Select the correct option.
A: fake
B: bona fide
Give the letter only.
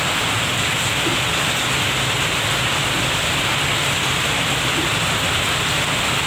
B